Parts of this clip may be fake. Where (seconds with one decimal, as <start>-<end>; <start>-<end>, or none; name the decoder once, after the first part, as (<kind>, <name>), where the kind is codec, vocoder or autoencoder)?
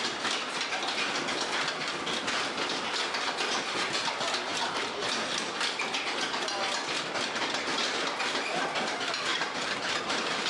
9.3-10.5 (vocoder, BigVGAN v2)